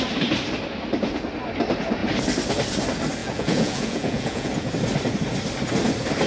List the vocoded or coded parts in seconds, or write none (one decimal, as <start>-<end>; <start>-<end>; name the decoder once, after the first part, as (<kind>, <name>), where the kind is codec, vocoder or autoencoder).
3.2-4.5 (vocoder, Vocos)